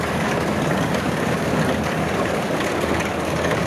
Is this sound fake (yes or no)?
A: yes